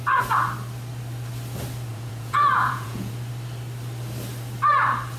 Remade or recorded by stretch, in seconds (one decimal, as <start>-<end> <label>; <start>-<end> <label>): 0.0-1.9 recorded; 1.9-3.1 remade; 3.1-5.2 recorded